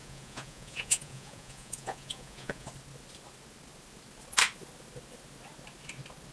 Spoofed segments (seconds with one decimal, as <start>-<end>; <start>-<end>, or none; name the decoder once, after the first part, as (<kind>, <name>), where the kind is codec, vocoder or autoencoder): 0.0-2.7 (vocoder, Vocos)